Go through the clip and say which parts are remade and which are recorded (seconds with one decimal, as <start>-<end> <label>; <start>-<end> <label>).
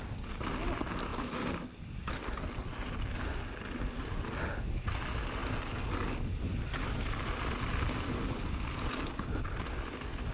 0.0-10.3 recorded